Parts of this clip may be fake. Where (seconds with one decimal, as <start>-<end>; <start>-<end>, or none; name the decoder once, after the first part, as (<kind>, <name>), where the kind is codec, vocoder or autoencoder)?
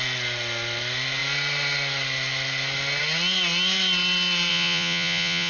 4.5-5.5 (vocoder, Vocos)